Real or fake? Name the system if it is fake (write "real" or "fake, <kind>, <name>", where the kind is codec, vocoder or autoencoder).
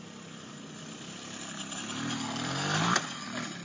real